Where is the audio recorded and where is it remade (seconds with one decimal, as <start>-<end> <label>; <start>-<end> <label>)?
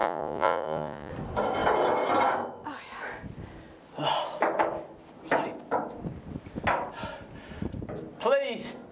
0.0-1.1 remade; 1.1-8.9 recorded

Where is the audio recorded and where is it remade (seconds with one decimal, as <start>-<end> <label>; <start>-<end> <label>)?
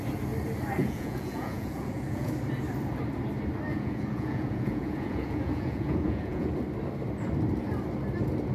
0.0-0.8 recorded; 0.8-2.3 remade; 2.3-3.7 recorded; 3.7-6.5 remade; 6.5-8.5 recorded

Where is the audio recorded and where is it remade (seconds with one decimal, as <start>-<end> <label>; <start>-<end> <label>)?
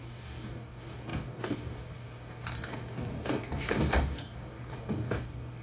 0.0-5.6 remade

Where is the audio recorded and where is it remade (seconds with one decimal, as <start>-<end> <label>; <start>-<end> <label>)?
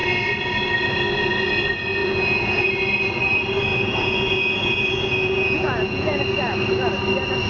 0.0-2.0 recorded; 2.0-2.7 remade; 2.7-3.7 recorded; 3.7-6.2 remade; 6.2-7.5 recorded